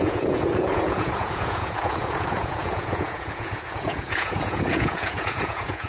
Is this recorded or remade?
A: remade